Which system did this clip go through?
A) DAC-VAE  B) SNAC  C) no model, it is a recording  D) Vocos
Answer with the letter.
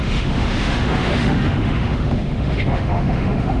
A